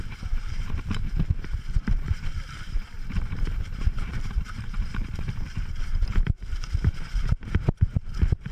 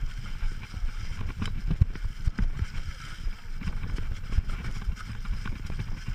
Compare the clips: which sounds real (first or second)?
second